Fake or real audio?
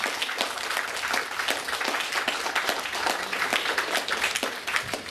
real